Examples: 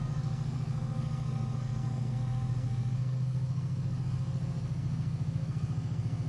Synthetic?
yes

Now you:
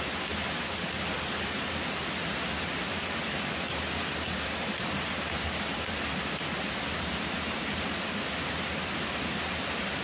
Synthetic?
no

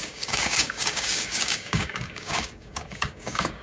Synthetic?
yes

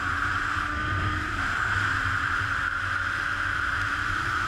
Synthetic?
yes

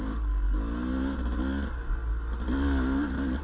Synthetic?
no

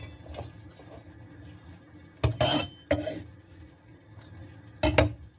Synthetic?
no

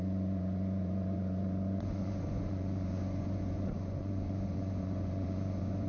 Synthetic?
yes